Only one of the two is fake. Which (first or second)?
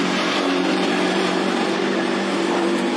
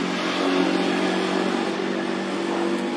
first